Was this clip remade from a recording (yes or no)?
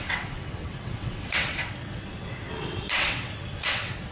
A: yes